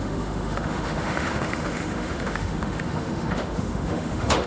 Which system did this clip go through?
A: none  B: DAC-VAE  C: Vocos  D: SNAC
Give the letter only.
B